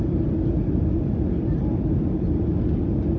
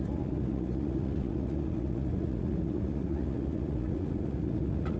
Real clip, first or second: first